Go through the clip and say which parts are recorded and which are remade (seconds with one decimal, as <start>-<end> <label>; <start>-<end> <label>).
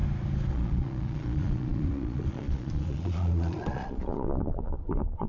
0.0-0.5 recorded; 0.5-5.3 remade